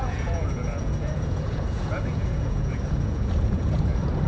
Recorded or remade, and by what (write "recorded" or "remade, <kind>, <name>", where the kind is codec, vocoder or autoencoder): remade, vocoder, Vocos